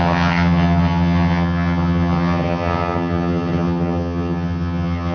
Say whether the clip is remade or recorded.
remade